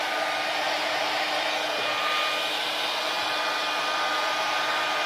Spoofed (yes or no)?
no